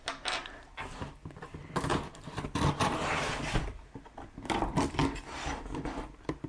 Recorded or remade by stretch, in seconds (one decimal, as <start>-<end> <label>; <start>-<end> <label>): 0.0-6.5 recorded